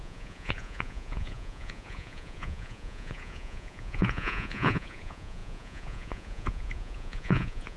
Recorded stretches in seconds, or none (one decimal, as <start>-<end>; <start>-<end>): none